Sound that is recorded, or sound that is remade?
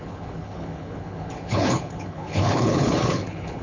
remade